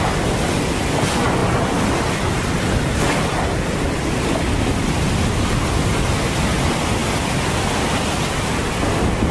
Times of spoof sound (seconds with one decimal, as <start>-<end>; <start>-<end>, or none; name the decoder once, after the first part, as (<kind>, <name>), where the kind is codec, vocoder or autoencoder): none